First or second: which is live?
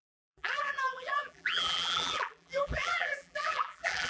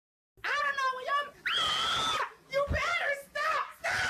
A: second